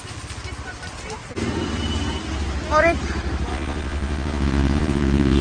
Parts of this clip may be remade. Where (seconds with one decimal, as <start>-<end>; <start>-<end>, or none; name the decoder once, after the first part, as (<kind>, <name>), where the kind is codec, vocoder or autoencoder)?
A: 3.5-5.4 (vocoder, Vocos)